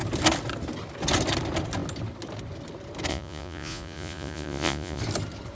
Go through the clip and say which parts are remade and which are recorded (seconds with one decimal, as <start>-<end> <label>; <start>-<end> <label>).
0.0-3.1 recorded; 3.1-5.0 remade; 5.0-5.5 recorded